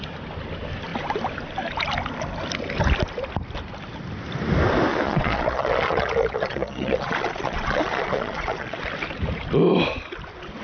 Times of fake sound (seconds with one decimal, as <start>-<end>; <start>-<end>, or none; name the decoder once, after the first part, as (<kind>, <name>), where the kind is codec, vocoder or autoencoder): 4.9-8.8 (vocoder, Vocos)